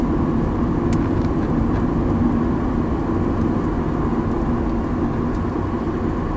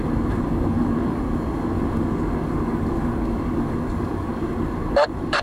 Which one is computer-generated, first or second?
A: second